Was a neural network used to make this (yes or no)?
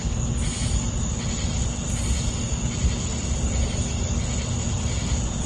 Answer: no